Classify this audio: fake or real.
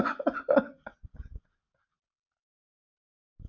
real